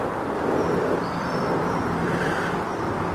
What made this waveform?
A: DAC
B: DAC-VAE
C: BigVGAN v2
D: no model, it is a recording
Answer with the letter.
C